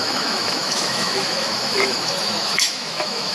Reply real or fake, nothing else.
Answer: fake